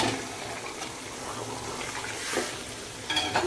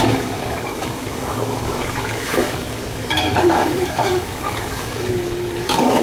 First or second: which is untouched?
first